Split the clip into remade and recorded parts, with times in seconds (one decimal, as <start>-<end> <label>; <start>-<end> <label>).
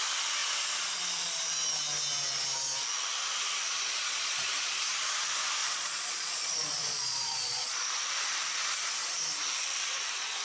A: 0.0-3.7 recorded; 3.7-5.1 remade; 5.1-5.6 recorded; 5.6-8.0 remade; 8.0-10.4 recorded